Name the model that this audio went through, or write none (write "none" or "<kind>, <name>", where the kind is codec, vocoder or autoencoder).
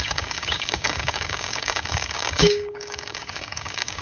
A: codec, DAC